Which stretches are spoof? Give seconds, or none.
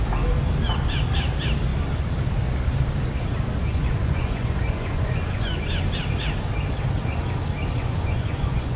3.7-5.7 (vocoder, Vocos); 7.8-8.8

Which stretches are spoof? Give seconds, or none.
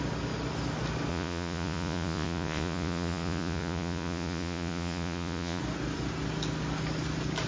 1.1-5.6 (vocoder, Vocos)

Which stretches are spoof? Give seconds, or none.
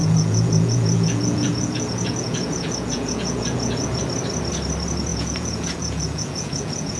0.0-4.0 (vocoder, Vocos); 5.1-7.0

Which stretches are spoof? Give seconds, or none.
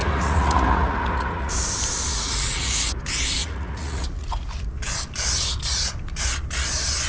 0.0-1.5 (vocoder, Vocos); 2.1-3.0; 3.4-4.5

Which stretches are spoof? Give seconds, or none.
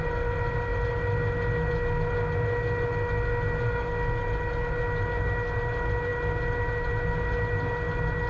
none